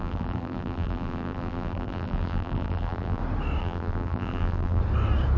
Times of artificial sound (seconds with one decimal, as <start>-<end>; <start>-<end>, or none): 0.0-3.2; 3.6-4.8